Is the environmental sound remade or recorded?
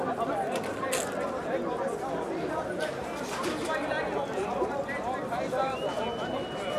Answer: recorded